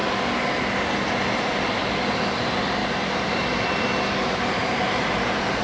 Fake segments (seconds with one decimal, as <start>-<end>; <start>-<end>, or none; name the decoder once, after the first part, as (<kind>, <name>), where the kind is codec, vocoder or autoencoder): 2.8-3.8 (vocoder, BigVGAN v2); 4.6-5.6